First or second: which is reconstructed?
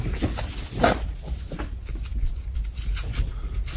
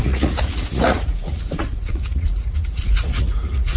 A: second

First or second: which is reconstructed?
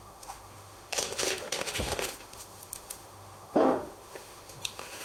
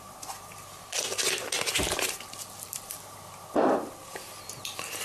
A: first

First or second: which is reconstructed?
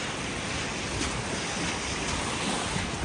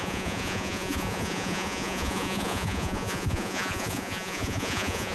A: second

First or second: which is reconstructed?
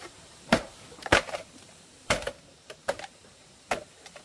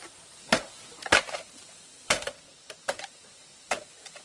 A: first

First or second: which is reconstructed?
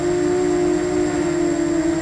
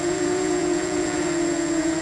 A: second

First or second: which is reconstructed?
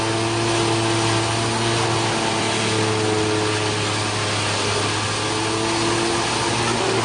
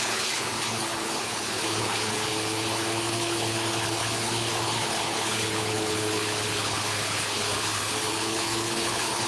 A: second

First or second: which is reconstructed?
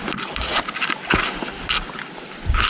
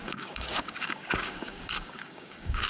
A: second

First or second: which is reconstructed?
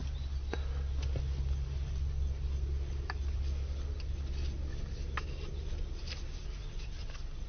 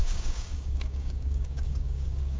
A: second